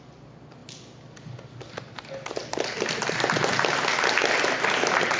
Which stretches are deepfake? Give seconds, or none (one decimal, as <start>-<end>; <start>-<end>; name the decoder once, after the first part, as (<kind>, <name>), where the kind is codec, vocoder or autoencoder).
0.0-0.6 (vocoder, BigVGAN v2); 1.7-2.4; 3.0-5.2